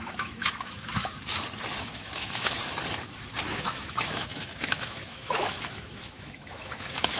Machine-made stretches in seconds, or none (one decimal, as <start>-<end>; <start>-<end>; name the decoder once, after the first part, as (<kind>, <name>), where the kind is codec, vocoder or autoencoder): 0.0-1.1 (autoencoder, DAC-VAE); 1.8-2.6; 3.5-7.2